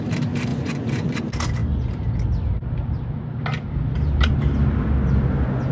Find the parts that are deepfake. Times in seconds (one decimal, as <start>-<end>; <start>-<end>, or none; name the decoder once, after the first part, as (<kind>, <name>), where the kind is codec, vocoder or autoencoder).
0.5-1.2 (vocoder, Vocos)